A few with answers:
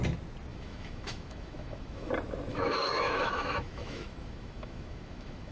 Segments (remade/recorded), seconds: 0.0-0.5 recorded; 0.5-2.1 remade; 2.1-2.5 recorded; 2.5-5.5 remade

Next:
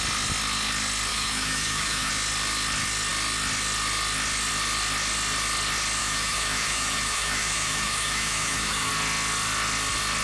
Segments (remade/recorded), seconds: 0.0-1.1 recorded; 1.1-2.1 remade; 2.1-6.0 recorded; 6.0-8.9 remade; 8.9-10.2 recorded

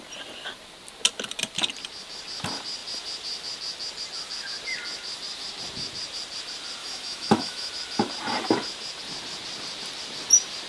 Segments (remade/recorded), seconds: 0.0-6.8 recorded; 6.8-7.7 remade; 7.7-10.7 recorded

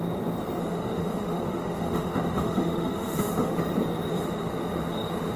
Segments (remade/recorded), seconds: 0.0-0.6 recorded; 0.6-3.6 remade; 3.6-4.1 recorded; 4.1-5.4 remade

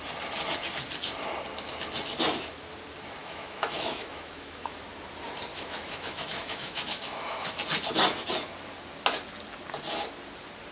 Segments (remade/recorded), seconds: 0.0-3.2 recorded; 3.2-4.8 remade; 4.8-5.5 recorded; 5.5-7.6 remade; 7.6-10.7 recorded

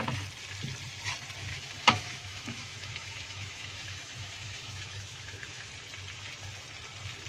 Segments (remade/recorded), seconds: 0.0-1.5 recorded; 1.5-5.7 remade; 5.7-7.3 recorded